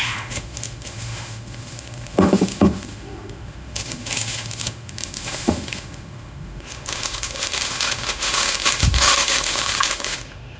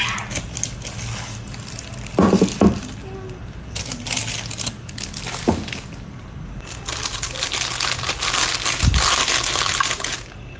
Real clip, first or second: second